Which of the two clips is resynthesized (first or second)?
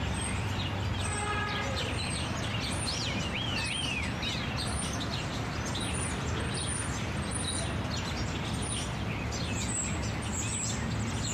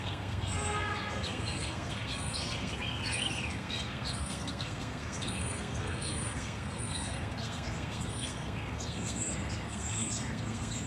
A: second